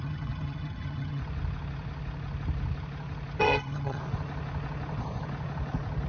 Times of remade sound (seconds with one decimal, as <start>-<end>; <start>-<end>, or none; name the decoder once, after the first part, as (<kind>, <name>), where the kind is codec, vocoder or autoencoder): 0.0-1.2 (vocoder, HiFi-GAN); 3.4-4.0